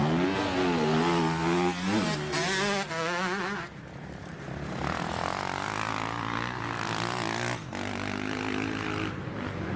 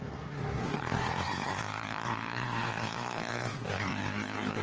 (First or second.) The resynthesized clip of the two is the second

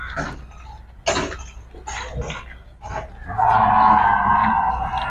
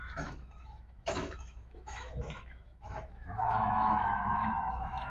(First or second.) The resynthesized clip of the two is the second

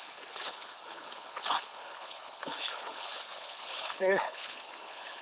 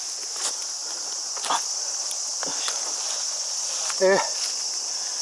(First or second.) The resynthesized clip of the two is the first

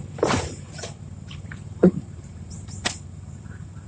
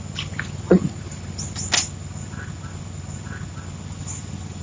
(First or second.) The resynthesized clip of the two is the first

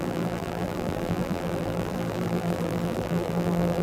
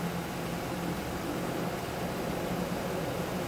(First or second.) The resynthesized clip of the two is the first